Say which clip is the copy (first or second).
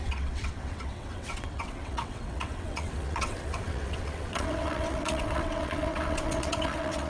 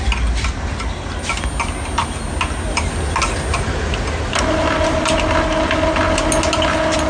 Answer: first